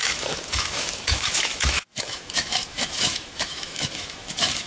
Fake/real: fake